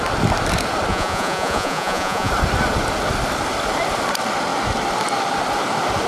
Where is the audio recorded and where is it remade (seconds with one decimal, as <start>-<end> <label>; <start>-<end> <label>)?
0.0-0.9 recorded; 0.9-2.3 remade; 2.3-6.1 recorded